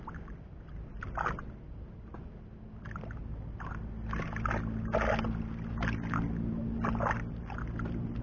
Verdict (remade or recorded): recorded